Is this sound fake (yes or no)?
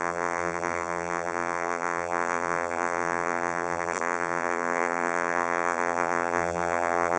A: yes